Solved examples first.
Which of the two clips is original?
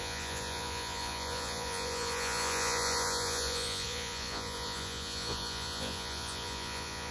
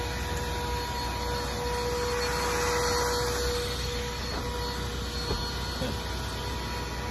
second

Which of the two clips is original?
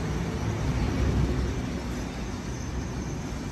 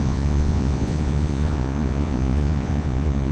first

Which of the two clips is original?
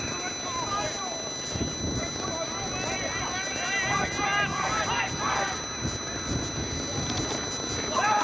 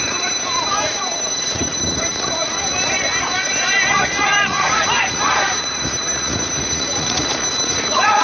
first